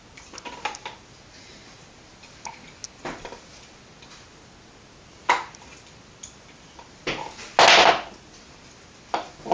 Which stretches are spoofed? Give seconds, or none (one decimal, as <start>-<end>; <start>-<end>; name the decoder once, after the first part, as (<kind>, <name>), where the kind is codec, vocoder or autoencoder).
none